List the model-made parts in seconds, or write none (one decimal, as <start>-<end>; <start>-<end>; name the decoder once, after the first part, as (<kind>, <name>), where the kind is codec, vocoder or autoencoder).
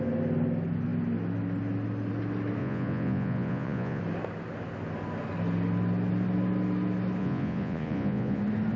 2.6-4.0 (vocoder, Vocos); 7.2-8.4